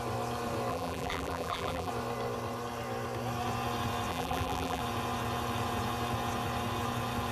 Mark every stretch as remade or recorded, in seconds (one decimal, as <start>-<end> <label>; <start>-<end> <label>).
0.0-0.7 recorded; 0.7-1.9 remade; 1.9-4.1 recorded; 4.1-4.8 remade; 4.8-7.3 recorded